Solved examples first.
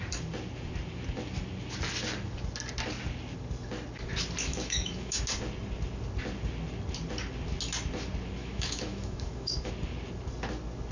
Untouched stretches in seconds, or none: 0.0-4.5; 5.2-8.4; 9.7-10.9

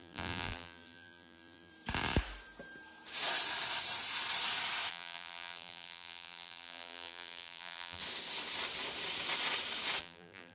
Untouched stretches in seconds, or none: 1.7-4.9; 8.0-10.0

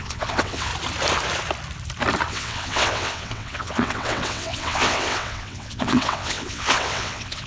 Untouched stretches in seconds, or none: 0.7-2.3

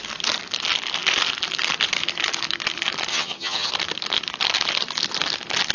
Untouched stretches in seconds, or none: 0.0-3.1; 3.7-5.7

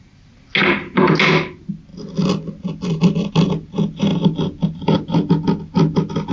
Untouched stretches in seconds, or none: 0.0-6.3

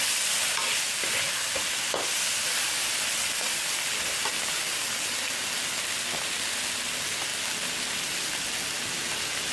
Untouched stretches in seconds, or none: 0.0-9.5

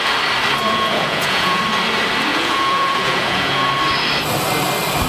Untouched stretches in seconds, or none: 0.0-0.6; 1.6-2.3; 3.7-5.1